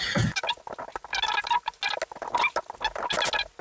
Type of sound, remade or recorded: recorded